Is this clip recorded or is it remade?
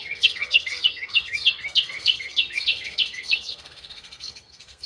remade